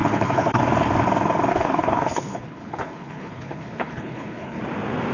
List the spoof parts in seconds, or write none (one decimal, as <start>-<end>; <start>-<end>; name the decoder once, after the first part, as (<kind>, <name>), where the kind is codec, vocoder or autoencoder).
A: 0.0-0.6 (codec, HILCodec); 1.5-4.6